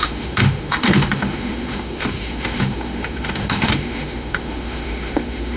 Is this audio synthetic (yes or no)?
yes